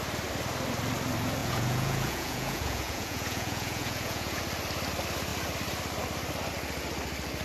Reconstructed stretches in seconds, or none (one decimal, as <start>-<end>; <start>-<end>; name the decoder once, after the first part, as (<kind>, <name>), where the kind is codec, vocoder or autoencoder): 1.4-4.4 (vocoder, Vocos)

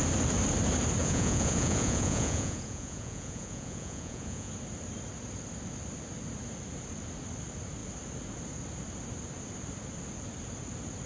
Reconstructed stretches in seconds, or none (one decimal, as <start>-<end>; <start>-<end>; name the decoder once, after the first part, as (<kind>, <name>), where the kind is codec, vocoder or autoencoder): 1.0-4.5 (vocoder, Vocos)

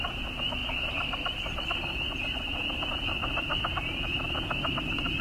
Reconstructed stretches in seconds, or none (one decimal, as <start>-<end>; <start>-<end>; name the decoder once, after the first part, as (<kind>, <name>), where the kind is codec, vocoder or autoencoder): none

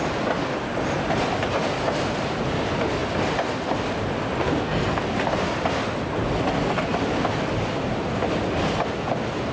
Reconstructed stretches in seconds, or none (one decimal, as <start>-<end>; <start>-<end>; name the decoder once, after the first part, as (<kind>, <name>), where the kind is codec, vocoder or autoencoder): 4.4-5.0 (codec, SNAC)